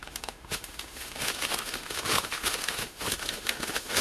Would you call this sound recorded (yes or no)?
no